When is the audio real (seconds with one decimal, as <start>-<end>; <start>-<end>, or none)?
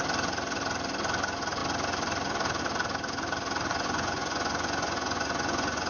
0.0-3.7